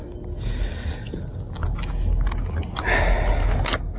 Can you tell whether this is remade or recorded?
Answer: recorded